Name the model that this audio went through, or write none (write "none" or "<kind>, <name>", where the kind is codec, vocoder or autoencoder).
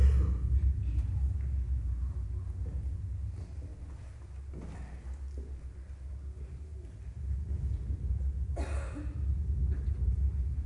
none